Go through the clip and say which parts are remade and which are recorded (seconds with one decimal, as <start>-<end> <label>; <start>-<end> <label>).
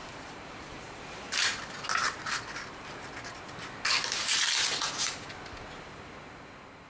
0.0-1.6 remade; 1.6-6.9 recorded